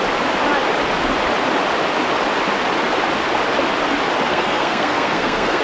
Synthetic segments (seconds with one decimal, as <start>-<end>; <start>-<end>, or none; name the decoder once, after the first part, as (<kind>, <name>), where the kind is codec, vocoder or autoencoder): 4.3-5.6 (codec, SNAC)